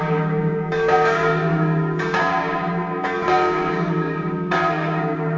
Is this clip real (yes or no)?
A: no